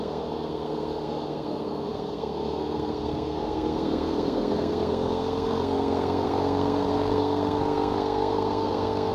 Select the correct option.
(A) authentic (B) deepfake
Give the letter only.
B